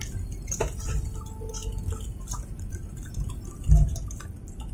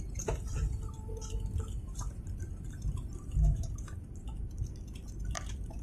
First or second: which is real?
first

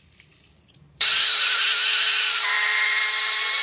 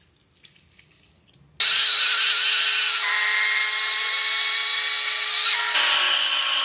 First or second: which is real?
second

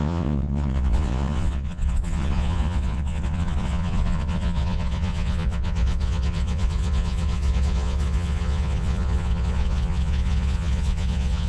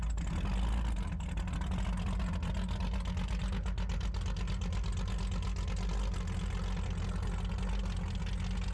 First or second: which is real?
second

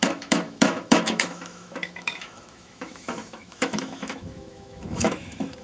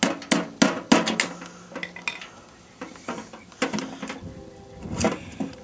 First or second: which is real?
second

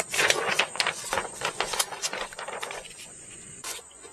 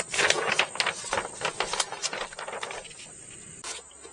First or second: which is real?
second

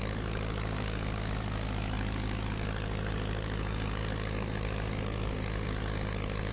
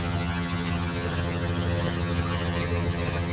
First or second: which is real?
first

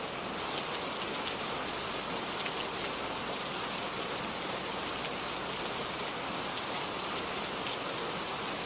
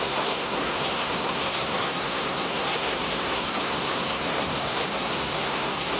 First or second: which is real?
first